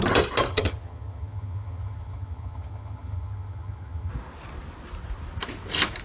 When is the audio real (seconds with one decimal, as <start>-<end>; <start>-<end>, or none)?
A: 0.0-0.5; 4.1-6.0